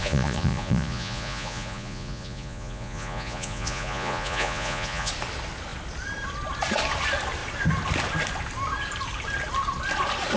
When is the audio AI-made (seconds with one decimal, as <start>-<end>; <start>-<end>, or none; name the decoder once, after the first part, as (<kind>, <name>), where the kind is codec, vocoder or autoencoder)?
0.0-5.1 (vocoder, Vocos)

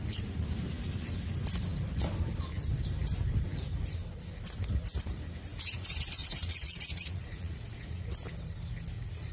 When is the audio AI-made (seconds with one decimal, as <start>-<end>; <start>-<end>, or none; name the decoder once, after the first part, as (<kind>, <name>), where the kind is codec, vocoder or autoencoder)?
6.2-8.1 (vocoder, Vocos)

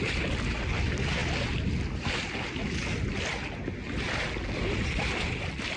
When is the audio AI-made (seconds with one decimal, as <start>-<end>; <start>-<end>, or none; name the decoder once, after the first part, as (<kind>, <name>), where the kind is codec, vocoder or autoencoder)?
none

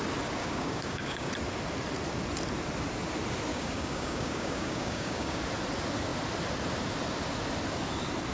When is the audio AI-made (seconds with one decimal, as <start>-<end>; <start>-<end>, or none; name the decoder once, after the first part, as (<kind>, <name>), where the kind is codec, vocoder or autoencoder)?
0.4-1.3 (codec, DAC); 3.5-5.4

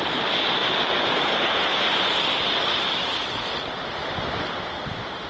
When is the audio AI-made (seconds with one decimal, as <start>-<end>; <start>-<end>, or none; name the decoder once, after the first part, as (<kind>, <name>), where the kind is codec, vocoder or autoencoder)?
0.6-3.6 (vocoder, BigVGAN v2)

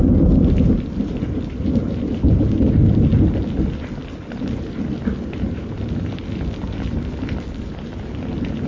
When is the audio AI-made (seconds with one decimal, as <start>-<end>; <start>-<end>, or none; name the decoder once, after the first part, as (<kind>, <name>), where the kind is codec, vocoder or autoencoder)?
none